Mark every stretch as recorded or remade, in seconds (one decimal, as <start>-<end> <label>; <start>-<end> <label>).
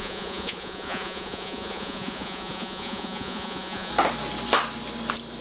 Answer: 0.0-3.9 remade; 3.9-5.4 recorded